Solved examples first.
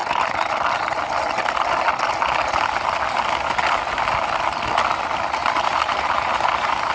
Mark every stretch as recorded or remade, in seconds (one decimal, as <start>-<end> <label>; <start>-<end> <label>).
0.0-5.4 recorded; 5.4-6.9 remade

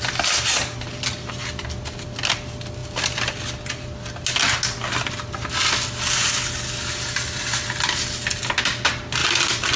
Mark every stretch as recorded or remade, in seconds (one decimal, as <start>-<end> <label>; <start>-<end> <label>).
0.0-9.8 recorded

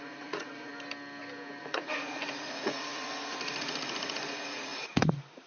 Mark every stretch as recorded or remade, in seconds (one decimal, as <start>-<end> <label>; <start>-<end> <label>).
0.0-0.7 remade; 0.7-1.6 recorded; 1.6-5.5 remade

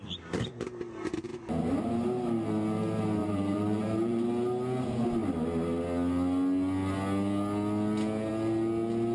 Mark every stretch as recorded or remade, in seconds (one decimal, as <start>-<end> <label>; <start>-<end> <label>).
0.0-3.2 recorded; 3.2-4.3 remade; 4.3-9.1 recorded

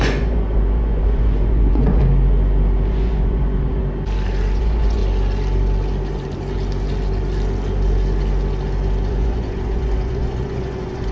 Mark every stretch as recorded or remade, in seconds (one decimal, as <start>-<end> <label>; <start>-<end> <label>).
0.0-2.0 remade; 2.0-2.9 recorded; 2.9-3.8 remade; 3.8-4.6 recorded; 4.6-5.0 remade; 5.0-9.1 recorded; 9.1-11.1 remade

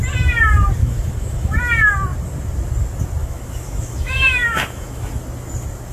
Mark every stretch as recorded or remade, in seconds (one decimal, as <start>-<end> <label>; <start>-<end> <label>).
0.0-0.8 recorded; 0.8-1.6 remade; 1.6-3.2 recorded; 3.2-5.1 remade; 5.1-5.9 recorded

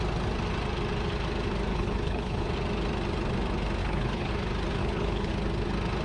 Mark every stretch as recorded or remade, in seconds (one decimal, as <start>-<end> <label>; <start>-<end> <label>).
0.0-1.7 recorded; 1.7-2.5 remade; 2.5-3.8 recorded; 3.8-4.3 remade; 4.3-4.8 recorded; 4.8-5.3 remade; 5.3-6.0 recorded

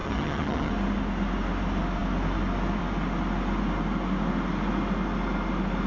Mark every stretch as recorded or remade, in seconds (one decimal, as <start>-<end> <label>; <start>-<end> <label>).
0.0-0.7 remade; 0.7-5.9 recorded